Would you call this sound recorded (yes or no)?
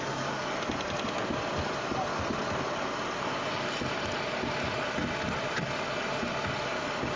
yes